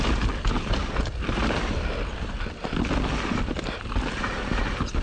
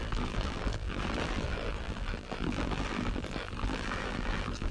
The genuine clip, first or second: first